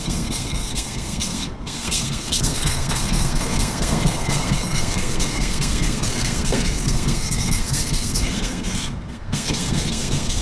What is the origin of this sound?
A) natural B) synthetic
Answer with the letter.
B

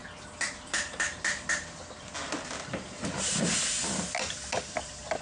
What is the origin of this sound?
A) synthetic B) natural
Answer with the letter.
B